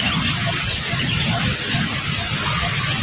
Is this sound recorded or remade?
recorded